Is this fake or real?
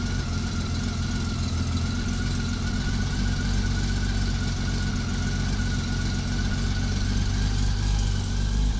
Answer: real